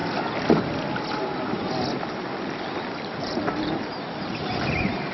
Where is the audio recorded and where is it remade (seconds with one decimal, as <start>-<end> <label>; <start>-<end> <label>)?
0.0-3.1 recorded; 3.1-5.1 remade